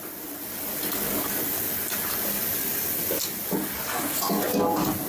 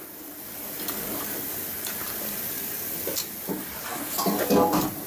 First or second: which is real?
first